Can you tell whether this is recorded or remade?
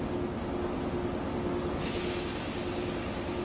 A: recorded